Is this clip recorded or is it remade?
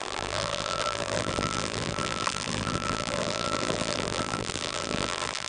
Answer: remade